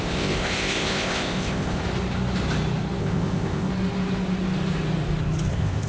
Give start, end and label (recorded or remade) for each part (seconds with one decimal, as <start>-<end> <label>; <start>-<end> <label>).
0.0-1.8 remade; 1.8-3.0 recorded; 3.0-3.7 remade; 3.7-5.5 recorded; 5.5-5.9 remade